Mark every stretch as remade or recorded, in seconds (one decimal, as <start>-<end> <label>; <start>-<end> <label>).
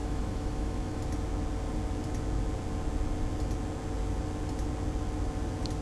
0.0-1.0 remade; 1.0-5.8 recorded